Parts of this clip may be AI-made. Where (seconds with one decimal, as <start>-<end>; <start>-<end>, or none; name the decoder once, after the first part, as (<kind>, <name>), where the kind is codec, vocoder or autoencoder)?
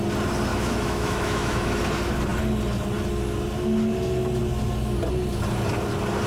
0.5-1.8 (autoencoder, DAC-VAE)